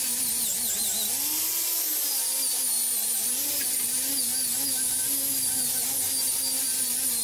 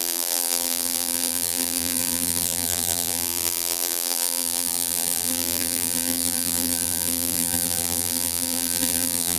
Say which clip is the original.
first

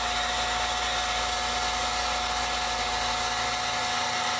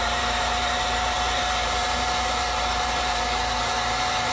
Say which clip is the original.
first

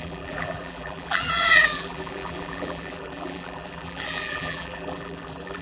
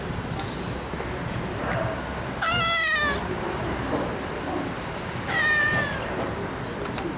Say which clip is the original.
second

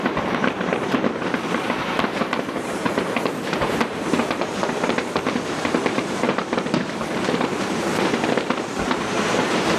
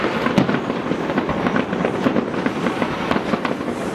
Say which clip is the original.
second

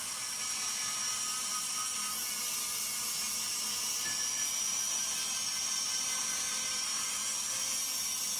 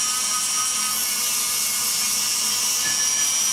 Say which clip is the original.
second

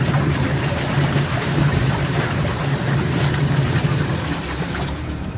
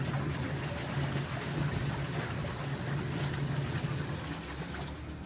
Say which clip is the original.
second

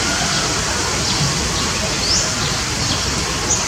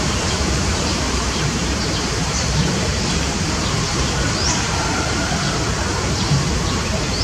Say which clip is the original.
first